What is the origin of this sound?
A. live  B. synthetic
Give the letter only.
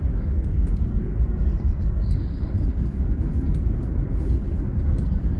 B